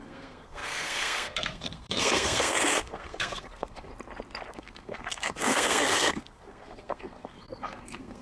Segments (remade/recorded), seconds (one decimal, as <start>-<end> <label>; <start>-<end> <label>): 0.0-3.9 remade; 3.9-4.5 recorded; 4.5-8.2 remade